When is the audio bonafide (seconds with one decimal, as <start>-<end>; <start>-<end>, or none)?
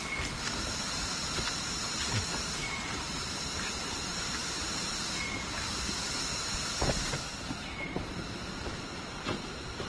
0.0-2.6; 5.2-9.9